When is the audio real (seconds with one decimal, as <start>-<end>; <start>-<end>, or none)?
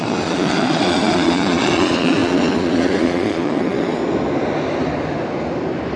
4.0-6.0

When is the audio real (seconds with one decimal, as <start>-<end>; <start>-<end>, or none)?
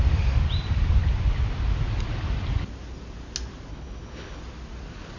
0.0-3.7; 4.4-5.2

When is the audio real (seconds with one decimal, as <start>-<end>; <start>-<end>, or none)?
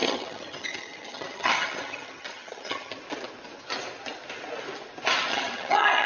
2.9-5.3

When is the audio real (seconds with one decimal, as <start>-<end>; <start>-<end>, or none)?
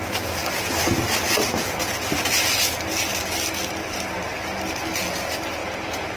0.0-0.4; 1.7-3.1; 4.1-5.6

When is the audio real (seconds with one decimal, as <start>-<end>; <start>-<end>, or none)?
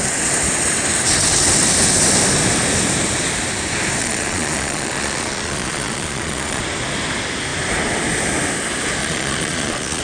0.0-4.0; 6.6-9.0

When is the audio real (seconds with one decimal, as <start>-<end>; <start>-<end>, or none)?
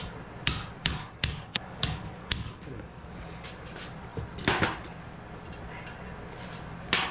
0.0-0.8; 3.5-7.1